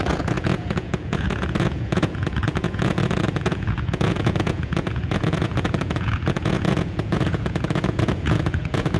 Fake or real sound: fake